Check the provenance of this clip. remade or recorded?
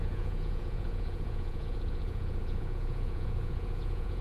remade